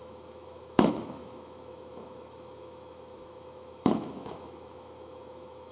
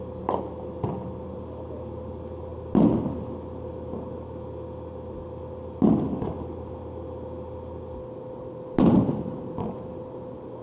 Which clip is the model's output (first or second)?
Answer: first